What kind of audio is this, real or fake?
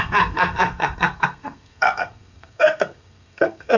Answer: fake